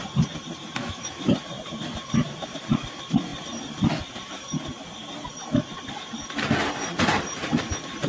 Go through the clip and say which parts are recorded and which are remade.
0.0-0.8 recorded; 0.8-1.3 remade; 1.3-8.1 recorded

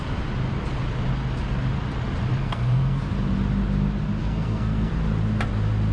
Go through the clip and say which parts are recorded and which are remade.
0.0-2.4 recorded; 2.4-3.0 remade; 3.0-4.2 recorded; 4.2-4.9 remade; 4.9-5.9 recorded